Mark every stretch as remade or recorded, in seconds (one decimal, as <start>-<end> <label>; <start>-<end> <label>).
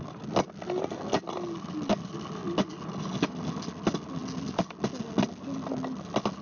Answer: 0.0-6.4 recorded